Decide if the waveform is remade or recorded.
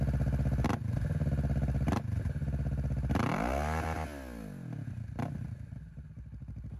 recorded